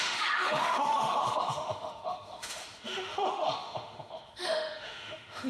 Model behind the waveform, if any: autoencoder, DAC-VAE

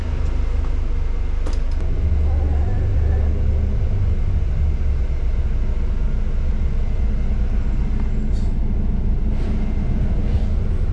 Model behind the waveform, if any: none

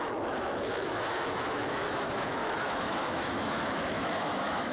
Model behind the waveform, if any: autoencoder, DAC-VAE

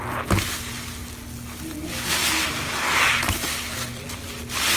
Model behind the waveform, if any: none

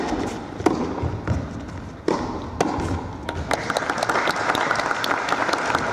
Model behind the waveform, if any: none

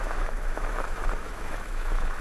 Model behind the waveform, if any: autoencoder, DAC-VAE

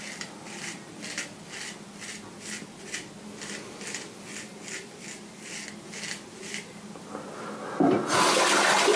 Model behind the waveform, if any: none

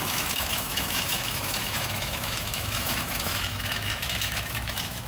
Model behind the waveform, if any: autoencoder, DAC-VAE